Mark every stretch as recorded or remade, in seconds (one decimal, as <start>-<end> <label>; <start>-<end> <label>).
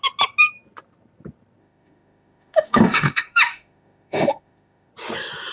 0.0-1.6 recorded; 1.6-4.9 remade; 4.9-5.5 recorded